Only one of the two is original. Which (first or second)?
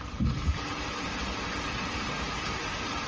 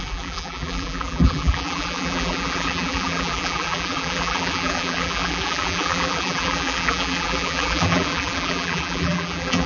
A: first